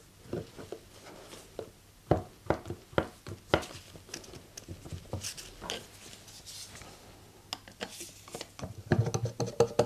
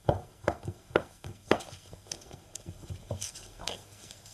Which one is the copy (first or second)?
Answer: second